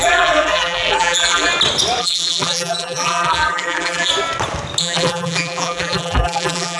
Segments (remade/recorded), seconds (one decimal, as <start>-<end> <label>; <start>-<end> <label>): 0.0-1.5 remade; 1.5-2.0 recorded; 2.0-4.1 remade; 4.1-4.8 recorded; 4.8-6.8 remade